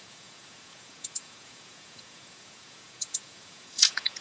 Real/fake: fake